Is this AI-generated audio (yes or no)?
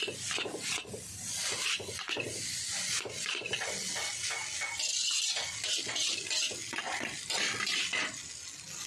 no